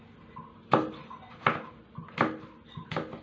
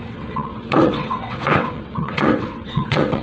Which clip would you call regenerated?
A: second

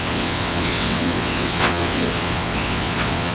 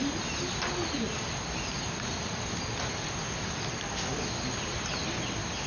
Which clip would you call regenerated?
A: first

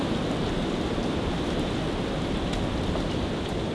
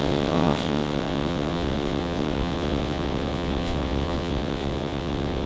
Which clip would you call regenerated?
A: second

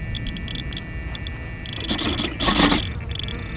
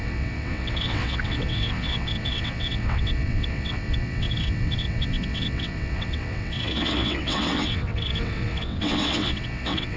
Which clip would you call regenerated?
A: second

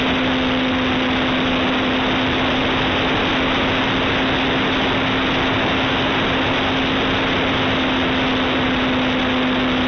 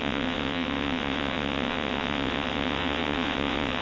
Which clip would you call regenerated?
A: second